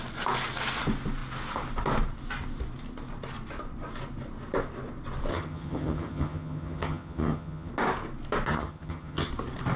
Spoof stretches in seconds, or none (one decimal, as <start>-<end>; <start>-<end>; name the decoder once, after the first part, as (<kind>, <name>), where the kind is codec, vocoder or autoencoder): 5.3-7.7 (vocoder, HiFi-GAN); 8.5-9.3

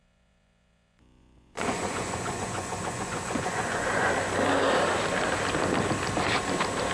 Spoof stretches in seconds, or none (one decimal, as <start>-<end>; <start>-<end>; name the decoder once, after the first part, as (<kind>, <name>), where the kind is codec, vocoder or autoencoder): 0.0-4.1 (vocoder, Vocos)

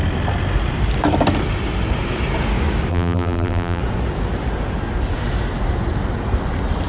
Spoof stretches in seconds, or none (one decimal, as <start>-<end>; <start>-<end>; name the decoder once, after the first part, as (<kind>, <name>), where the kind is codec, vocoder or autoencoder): 2.9-3.8 (vocoder, BigVGAN v2)

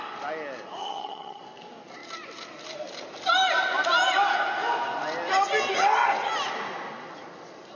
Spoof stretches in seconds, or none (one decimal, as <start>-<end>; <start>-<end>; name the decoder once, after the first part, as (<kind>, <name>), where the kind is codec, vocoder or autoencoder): 0.8-1.4 (vocoder, HiFi-GAN)

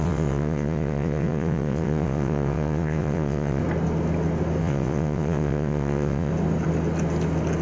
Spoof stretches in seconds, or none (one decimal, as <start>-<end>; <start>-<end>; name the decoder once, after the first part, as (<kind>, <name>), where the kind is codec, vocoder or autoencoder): 0.0-3.6 (vocoder, WaveNeXt); 4.6-6.3

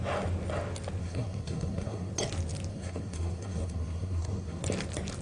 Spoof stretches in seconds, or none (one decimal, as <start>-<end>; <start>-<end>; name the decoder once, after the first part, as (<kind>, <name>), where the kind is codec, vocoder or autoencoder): 1.0-2.1 (codec, SNAC); 2.7-4.6

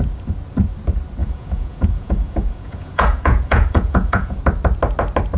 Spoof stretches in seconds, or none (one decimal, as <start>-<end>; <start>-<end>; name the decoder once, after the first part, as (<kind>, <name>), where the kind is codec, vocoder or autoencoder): 1.2-4.4 (vocoder, Vocos)

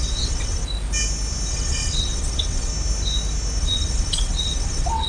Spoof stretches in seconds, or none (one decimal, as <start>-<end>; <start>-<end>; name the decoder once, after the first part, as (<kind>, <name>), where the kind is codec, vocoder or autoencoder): 0.0-0.6 (vocoder, WaveNeXt); 1.5-2.7; 3.6-5.1